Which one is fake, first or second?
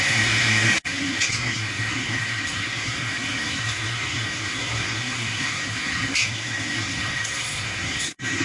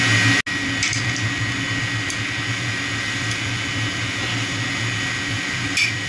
first